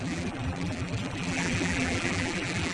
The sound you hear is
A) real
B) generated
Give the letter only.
B